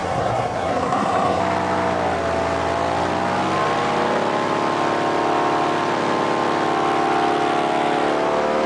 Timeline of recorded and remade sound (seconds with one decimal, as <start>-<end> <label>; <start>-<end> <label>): 0.0-1.4 remade; 1.4-8.7 recorded